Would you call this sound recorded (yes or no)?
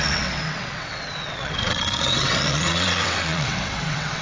no